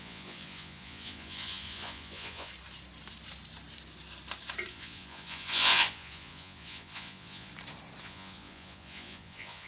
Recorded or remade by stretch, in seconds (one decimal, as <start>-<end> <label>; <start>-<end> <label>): 0.0-2.5 remade; 2.5-4.7 recorded; 4.7-7.5 remade; 7.5-8.0 recorded; 8.0-9.7 remade